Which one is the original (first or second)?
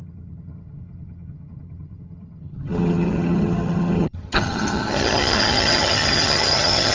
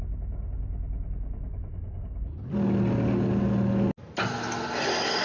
second